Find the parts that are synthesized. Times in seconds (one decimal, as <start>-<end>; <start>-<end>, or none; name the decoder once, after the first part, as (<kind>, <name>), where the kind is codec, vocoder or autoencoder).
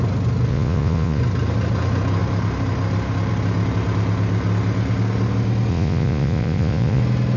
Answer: 0.5-1.2 (vocoder, Vocos); 5.7-7.0